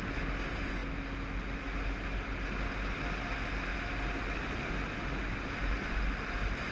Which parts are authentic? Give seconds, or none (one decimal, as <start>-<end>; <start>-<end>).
0.0-6.7